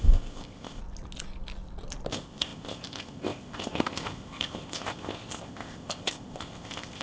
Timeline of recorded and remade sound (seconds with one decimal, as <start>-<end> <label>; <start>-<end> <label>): 0.0-0.8 remade; 0.8-2.1 recorded; 2.1-7.0 remade